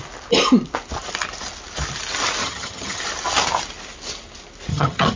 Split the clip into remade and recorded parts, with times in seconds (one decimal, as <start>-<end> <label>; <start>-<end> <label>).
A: 0.0-2.4 recorded; 2.4-3.0 remade; 3.0-4.7 recorded; 4.7-5.2 remade